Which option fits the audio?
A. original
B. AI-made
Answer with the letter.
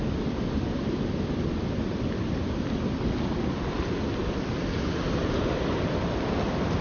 A